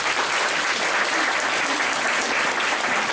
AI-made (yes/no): no